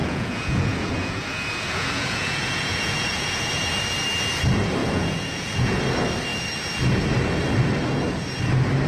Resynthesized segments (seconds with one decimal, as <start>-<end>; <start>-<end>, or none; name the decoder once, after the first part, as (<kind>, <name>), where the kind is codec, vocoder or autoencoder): 0.0-3.7 (vocoder, Vocos); 4.8-5.8